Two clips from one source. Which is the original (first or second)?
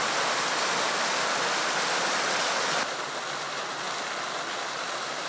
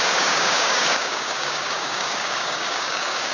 first